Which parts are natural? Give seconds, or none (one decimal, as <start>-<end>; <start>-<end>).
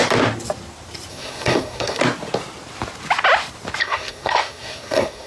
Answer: 0.0-1.1; 2.0-3.8